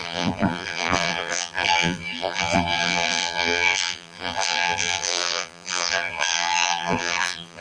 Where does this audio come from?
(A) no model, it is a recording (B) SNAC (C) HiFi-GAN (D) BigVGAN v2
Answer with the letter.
D